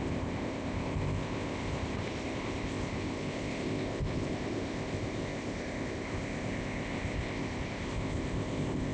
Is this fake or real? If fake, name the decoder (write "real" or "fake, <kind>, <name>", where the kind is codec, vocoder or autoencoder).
fake, codec, ZipCodec